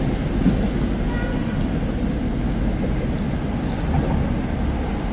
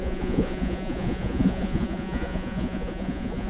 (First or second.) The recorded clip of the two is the first